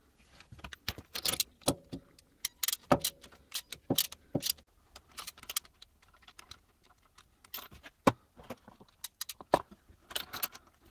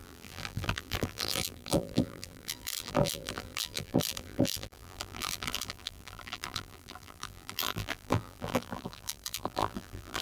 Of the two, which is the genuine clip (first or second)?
first